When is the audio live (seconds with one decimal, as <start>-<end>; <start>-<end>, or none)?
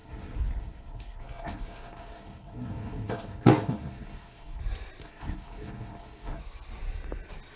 4.6-5.0; 6.4-7.6